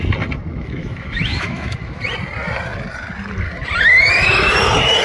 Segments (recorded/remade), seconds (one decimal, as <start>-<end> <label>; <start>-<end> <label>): 0.0-0.5 recorded; 0.5-2.0 remade; 2.0-5.0 recorded